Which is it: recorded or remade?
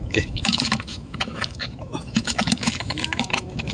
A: remade